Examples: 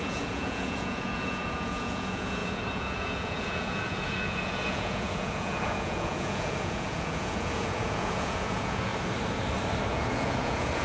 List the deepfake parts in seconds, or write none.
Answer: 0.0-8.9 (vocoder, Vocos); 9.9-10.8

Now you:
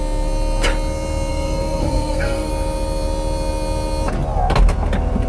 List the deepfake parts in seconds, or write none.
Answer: 1.3-2.5 (codec, SNAC)

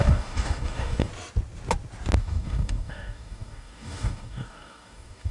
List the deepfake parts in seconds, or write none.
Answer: 0.0-1.1 (codec, DAC); 2.2-5.3

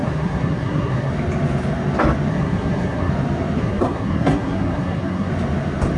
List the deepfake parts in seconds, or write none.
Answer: 0.0-1.1 (codec, SNAC); 2.3-3.1; 3.6-5.3

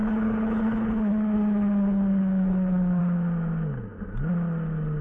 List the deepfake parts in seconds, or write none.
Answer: 0.0-3.0 (codec, HILCodec)

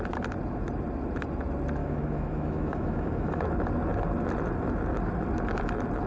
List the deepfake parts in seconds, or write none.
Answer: 1.8-3.4 (autoencoder, DAC-VAE)

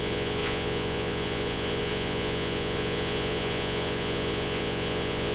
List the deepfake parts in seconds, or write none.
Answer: 0.0-5.3 (vocoder, Vocos)

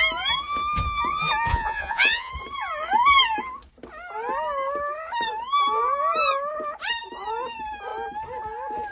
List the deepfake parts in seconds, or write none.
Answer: 1.5-2.3 (vocoder, Vocos)